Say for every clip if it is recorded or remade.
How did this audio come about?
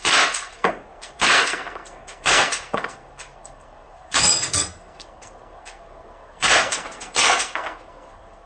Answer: remade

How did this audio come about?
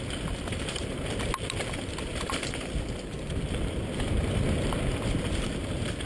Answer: recorded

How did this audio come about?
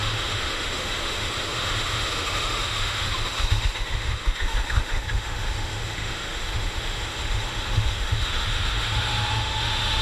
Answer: remade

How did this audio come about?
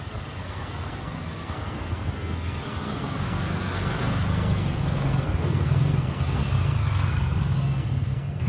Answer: remade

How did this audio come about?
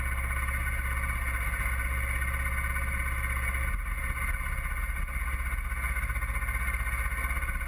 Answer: recorded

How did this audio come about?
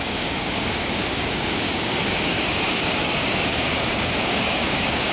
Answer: remade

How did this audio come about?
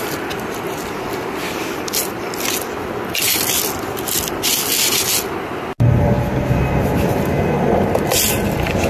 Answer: recorded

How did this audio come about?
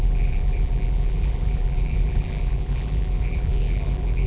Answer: remade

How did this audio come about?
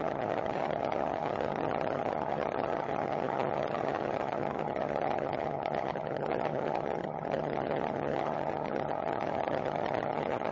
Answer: remade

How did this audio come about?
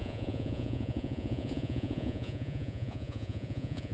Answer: remade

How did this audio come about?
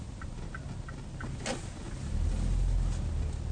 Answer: recorded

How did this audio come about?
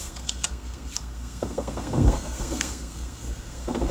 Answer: remade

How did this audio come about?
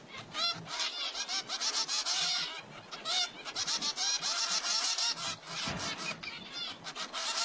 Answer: recorded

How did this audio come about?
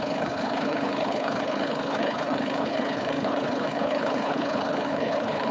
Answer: remade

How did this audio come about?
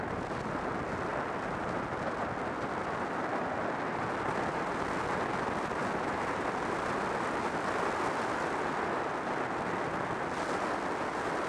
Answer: recorded